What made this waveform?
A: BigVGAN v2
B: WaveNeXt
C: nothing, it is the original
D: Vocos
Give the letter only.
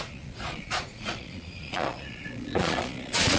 D